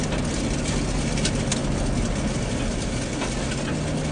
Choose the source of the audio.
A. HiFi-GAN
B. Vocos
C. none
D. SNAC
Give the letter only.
C